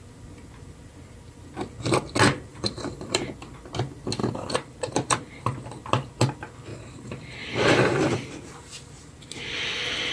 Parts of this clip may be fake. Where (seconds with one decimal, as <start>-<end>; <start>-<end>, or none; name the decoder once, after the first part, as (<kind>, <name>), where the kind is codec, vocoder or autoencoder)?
2.5-3.3 (vocoder, BigVGAN v2); 4.2-5.4; 6.7-8.3